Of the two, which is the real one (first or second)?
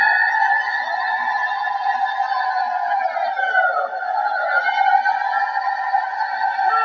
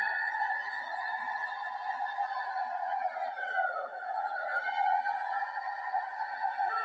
first